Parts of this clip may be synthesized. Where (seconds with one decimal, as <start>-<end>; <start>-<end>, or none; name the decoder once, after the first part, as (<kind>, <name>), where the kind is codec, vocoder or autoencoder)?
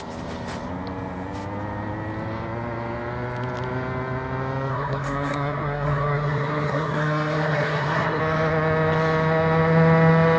4.7-8.2 (codec, SNAC)